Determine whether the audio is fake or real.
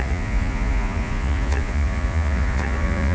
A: fake